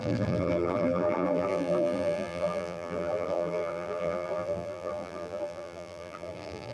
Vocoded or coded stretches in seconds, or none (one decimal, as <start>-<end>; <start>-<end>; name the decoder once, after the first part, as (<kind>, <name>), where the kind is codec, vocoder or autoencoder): 0.0-6.7 (vocoder, BigVGAN v2)